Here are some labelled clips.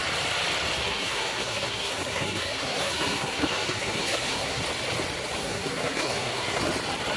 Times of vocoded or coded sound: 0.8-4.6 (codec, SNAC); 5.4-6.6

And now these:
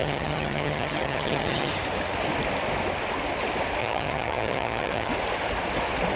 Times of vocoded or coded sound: 0.0-1.7 (vocoder, HiFi-GAN); 3.8-5.1

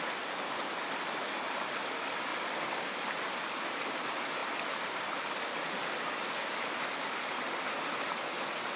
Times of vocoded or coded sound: none

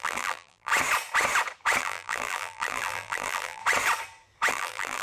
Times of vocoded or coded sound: 0.0-0.7 (vocoder, BigVGAN v2); 1.8-3.6; 4.5-5.0